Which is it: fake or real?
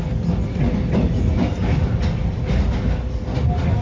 real